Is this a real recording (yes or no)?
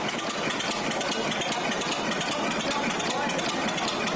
yes